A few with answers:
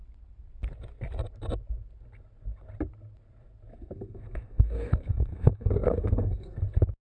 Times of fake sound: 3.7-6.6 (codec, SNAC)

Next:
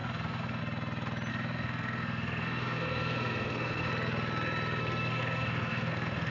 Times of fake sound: 0.0-0.6 (codec, SNAC); 1.3-3.9; 4.8-6.3

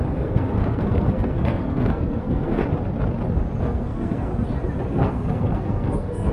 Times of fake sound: 0.0-2.6 (codec, SNAC); 3.6-4.3; 4.9-6.3

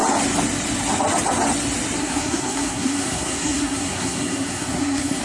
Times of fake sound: 2.0-5.2 (codec, SNAC)

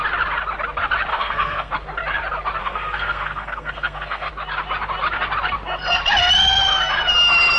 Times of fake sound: 1.1-1.7 (codec, SNAC); 2.6-4.3

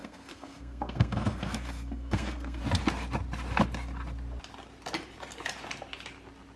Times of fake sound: 0.0-2.6 (codec, SNAC)